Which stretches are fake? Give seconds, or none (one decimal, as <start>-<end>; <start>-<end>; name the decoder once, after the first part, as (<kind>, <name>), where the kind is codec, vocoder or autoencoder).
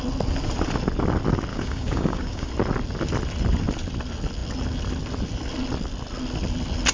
1.5-2.5 (codec, DAC)